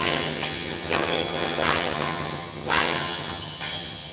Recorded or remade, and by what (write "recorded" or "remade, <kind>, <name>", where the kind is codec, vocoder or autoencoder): remade, vocoder, HiFi-GAN